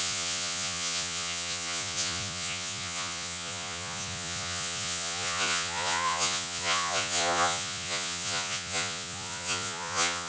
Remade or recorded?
remade